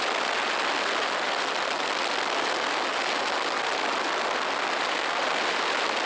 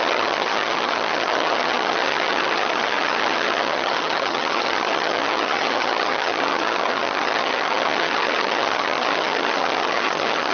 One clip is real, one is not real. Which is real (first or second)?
first